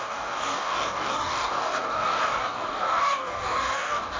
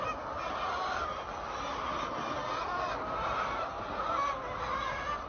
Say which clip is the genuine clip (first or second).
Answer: second